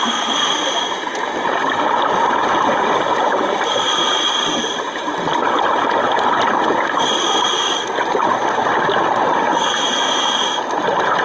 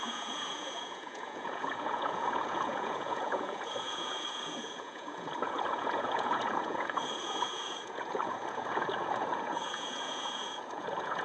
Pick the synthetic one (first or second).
second